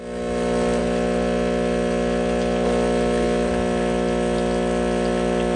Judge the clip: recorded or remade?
recorded